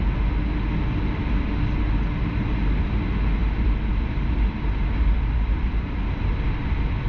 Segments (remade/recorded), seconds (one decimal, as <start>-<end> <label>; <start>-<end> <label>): 0.0-7.1 recorded

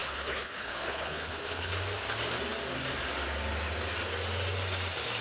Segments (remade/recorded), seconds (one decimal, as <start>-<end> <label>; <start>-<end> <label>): 0.0-1.7 remade; 1.7-5.2 recorded

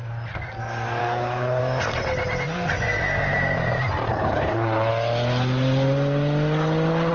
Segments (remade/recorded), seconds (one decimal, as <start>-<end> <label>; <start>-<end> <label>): 0.0-1.0 recorded; 1.0-1.6 remade; 1.6-4.1 recorded; 4.1-4.9 remade; 4.9-7.1 recorded

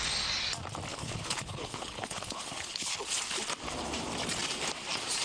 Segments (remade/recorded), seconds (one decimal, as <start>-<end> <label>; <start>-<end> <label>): 0.0-0.9 recorded; 0.9-2.9 remade; 2.9-5.2 recorded

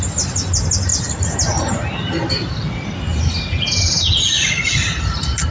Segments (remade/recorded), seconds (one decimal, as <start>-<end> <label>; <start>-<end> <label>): 0.0-5.5 recorded

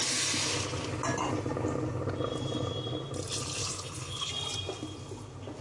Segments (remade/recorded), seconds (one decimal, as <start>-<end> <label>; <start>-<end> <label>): 0.0-3.6 recorded; 3.6-4.3 remade; 4.3-5.6 recorded

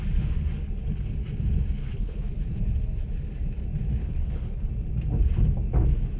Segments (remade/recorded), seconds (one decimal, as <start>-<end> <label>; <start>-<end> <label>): 0.0-1.8 recorded; 1.8-2.3 remade; 2.3-4.0 recorded; 4.0-4.7 remade; 4.7-6.2 recorded

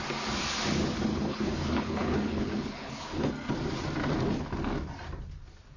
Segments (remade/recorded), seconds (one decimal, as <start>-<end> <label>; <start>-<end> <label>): 0.0-1.1 recorded; 1.1-3.3 remade; 3.3-5.8 recorded